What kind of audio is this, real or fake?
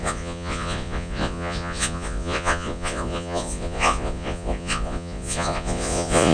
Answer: fake